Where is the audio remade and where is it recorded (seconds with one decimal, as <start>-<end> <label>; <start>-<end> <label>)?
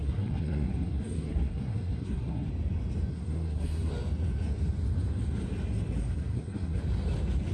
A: 0.0-2.5 remade; 2.5-3.1 recorded; 3.1-3.9 remade; 3.9-6.0 recorded; 6.0-6.8 remade; 6.8-7.5 recorded